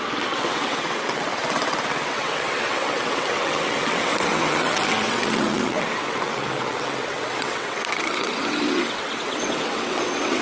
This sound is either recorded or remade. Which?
remade